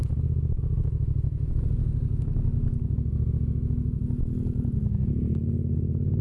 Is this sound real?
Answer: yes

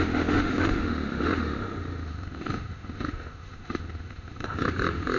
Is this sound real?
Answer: no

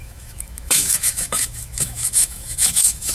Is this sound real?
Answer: no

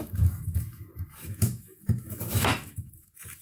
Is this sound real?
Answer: no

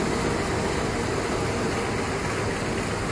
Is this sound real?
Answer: yes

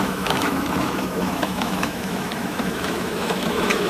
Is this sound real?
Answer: no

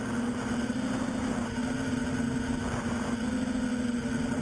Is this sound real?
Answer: yes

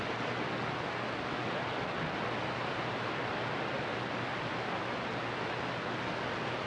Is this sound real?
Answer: yes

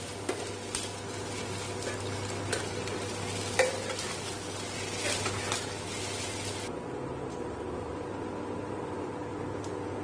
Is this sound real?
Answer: yes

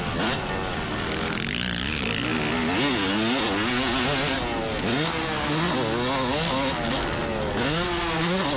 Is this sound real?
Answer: yes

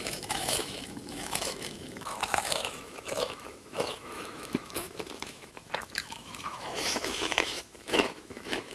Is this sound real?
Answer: no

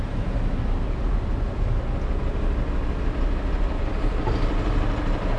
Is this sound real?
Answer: yes